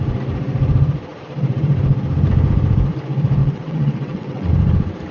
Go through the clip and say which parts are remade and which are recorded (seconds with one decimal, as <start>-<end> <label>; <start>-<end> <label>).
0.0-3.4 recorded; 3.4-4.5 remade; 4.5-5.1 recorded